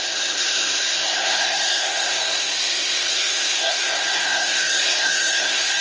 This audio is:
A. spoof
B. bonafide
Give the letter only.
A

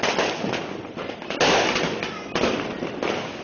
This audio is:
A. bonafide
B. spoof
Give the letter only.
A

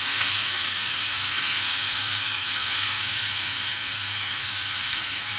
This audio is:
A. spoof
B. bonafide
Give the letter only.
A